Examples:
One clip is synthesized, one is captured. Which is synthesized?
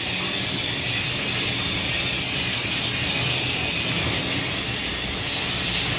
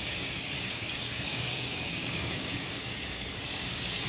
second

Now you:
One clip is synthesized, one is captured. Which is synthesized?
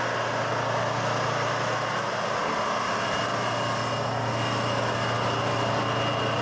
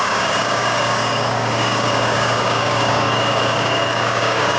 second